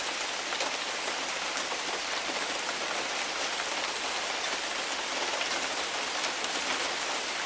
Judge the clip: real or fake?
real